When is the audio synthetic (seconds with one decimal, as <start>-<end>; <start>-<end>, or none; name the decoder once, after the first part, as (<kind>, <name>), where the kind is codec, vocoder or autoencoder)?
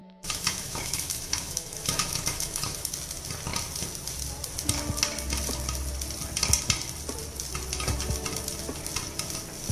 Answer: 0.0-2.9 (autoencoder, DAC-VAE)